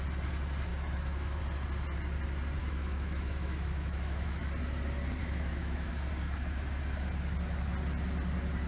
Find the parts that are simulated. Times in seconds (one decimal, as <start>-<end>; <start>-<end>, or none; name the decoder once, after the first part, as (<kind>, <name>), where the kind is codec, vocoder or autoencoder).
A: 0.7-1.4 (autoencoder, DAC-VAE); 2.6-4.4; 5.2-5.9